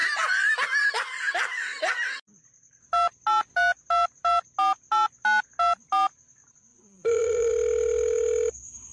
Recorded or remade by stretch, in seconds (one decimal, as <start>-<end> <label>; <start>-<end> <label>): 0.0-6.7 recorded; 6.7-7.5 remade; 7.5-8.9 recorded